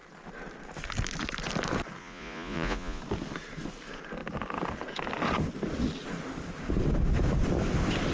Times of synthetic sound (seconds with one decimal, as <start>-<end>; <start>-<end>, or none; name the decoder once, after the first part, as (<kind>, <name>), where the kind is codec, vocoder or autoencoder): 2.0-3.0 (vocoder, Vocos)